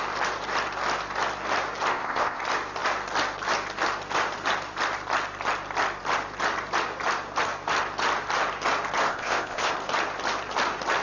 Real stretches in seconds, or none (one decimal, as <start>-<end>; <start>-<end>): 0.0-1.9; 2.4-9.1; 9.7-11.0